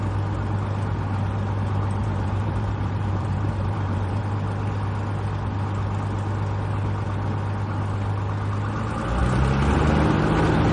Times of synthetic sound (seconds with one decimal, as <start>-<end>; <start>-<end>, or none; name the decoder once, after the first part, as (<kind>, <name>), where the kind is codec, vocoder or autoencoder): 2.0-4.2 (vocoder, BigVGAN v2)